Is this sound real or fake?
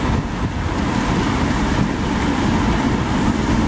real